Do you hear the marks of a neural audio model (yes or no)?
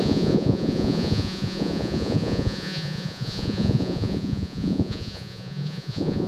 yes